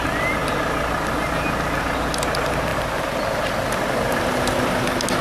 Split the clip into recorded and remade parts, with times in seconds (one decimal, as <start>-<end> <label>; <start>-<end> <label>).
0.0-5.2 recorded